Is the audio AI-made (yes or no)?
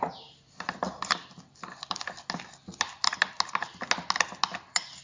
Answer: no